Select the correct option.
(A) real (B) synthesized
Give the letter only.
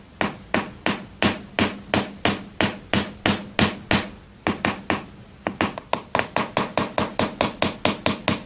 A